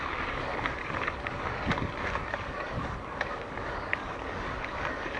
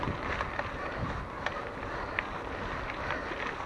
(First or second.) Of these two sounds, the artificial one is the first